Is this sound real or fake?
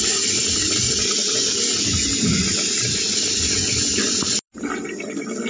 real